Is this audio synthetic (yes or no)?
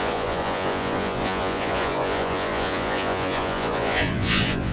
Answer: yes